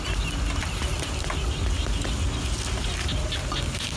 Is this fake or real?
real